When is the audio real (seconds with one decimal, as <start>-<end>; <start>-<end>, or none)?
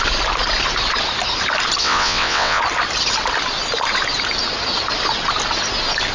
0.0-1.8; 2.6-6.1